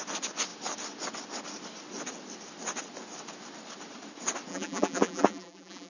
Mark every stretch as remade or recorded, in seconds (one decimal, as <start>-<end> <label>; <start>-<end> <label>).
0.0-4.5 recorded; 4.5-5.9 remade